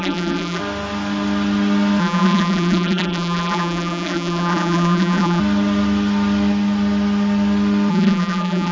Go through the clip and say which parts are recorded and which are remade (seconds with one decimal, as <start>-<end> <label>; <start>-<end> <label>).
0.0-0.6 remade; 0.6-2.0 recorded; 2.0-5.4 remade; 5.4-7.9 recorded; 7.9-8.7 remade